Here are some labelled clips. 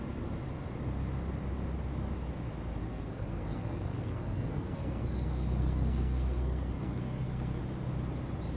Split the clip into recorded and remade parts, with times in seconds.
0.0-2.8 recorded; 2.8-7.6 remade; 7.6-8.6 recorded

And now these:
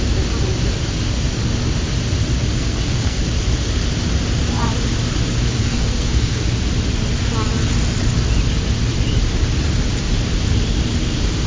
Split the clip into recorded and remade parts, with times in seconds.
0.0-2.5 recorded; 2.5-3.2 remade; 3.2-5.6 recorded; 5.6-6.4 remade; 6.4-11.5 recorded

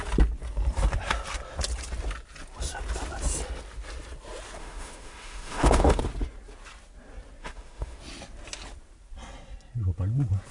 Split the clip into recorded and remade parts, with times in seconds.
0.0-4.6 recorded; 4.6-6.0 remade; 6.0-7.4 recorded; 7.4-8.0 remade; 8.0-10.5 recorded

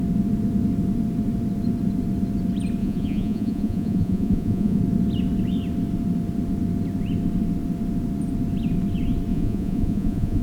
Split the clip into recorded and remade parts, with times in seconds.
0.0-2.8 recorded; 2.8-4.8 remade; 4.8-9.3 recorded; 9.3-10.4 remade

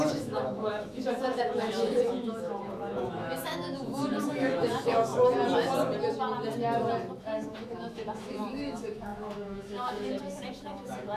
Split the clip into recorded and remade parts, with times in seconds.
0.0-5.1 remade; 5.1-7.2 recorded; 7.2-11.2 remade